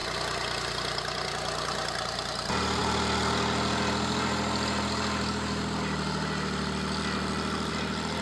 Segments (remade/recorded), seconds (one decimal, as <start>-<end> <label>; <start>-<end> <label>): 0.0-8.2 recorded